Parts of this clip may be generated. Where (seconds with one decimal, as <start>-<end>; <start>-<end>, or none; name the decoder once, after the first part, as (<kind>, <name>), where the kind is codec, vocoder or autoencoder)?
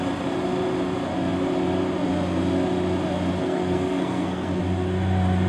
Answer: 3.4-4.6 (codec, SNAC)